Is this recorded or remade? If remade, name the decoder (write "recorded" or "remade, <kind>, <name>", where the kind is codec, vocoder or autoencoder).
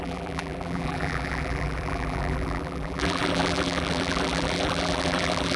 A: remade, vocoder, BigVGAN v2